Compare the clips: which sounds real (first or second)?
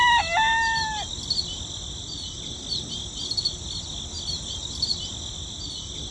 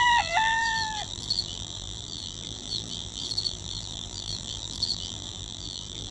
first